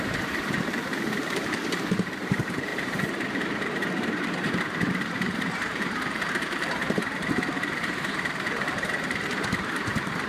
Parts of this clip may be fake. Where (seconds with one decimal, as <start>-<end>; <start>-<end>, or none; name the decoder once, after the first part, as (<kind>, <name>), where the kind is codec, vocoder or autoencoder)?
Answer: 0.0-10.3 (vocoder, BigVGAN v2)